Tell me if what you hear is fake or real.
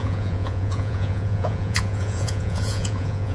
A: fake